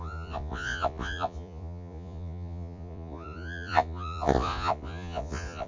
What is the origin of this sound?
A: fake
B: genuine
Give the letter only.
A